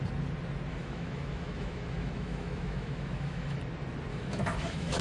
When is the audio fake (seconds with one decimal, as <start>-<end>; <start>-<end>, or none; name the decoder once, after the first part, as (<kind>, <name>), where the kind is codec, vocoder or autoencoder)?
0.7-3.6 (autoencoder, DAC-VAE); 4.1-5.0